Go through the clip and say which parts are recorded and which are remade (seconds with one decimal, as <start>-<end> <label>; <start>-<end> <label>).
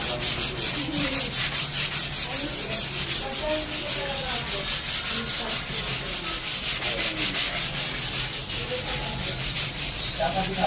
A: 0.0-10.7 recorded